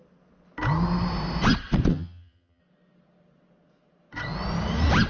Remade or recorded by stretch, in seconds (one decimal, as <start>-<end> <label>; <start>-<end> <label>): 0.0-1.9 recorded; 1.9-2.6 remade; 2.6-5.1 recorded

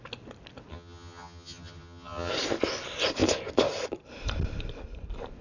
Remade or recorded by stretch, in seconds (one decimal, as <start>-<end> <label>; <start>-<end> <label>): 0.0-0.7 recorded; 0.7-2.3 remade; 2.3-5.4 recorded

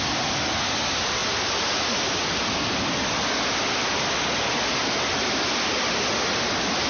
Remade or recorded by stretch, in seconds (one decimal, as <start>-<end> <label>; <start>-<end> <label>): 0.0-6.9 recorded

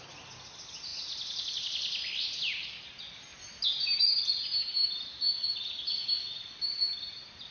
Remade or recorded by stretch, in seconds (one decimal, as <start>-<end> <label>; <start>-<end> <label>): 0.0-7.5 recorded

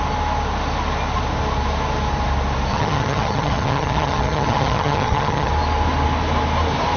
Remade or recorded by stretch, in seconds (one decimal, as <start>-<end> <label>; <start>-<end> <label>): 0.0-2.7 recorded; 2.7-5.5 remade; 5.5-7.0 recorded